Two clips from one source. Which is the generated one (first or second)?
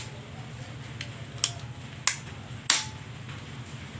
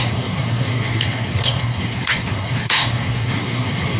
second